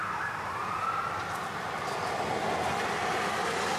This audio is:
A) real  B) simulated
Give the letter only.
A